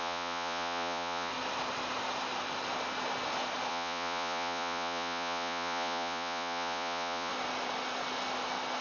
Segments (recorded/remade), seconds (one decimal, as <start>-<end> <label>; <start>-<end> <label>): 0.0-1.3 remade; 1.3-3.7 recorded; 3.7-7.3 remade; 7.3-8.8 recorded